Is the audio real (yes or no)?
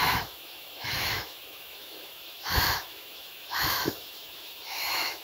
no